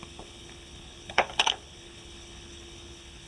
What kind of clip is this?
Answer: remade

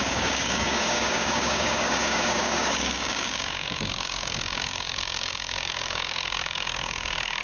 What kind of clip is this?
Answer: remade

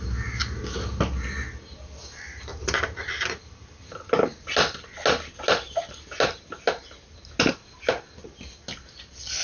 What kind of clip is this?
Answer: recorded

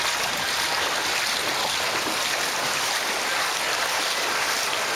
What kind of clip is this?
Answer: recorded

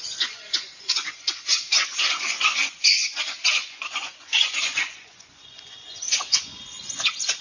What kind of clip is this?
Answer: remade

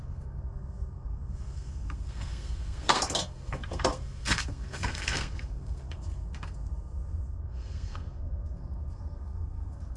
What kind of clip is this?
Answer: remade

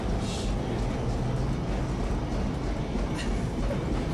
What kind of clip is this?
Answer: recorded